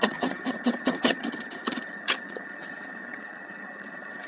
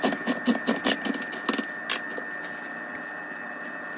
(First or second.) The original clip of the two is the second